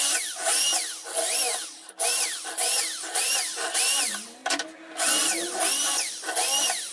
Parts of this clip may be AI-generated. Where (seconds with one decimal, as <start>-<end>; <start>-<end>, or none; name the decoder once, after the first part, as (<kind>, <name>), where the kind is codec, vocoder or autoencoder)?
none

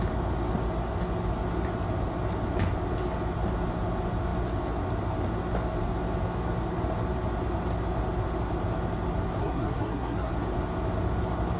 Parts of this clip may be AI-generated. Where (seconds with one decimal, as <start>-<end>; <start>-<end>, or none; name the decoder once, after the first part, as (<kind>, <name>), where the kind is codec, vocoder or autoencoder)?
9.4-10.3 (codec, SNAC)

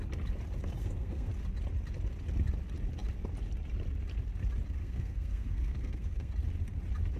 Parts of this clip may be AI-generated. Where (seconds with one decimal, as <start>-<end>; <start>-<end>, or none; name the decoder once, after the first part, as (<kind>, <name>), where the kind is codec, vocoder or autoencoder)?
0.8-1.3 (codec, SNAC); 4.8-6.3

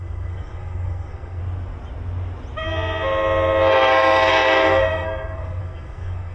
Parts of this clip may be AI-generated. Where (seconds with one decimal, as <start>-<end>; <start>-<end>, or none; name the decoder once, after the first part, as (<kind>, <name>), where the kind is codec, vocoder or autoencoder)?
0.0-1.4 (codec, SNAC); 3.7-6.3

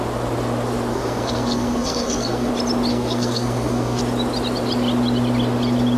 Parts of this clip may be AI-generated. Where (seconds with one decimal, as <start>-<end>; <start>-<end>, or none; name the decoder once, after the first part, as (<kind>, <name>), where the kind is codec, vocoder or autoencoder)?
0.9-2.5 (codec, SNAC); 2.9-4.0

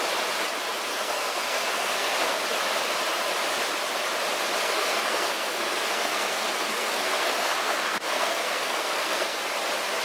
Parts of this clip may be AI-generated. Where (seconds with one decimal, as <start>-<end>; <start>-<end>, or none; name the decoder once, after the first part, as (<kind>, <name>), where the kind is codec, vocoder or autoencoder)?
0.9-2.4 (codec, SNAC); 4.6-9.4

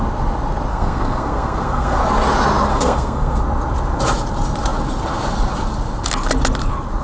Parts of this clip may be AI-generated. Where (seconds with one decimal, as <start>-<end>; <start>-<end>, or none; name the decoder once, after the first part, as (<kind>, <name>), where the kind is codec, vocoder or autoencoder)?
0.7-2.0 (codec, SNAC); 2.7-3.4